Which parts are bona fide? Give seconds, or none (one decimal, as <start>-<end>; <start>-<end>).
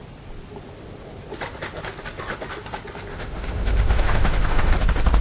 0.0-3.1; 4.7-5.2